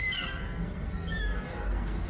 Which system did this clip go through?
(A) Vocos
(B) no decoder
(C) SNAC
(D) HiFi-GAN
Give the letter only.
C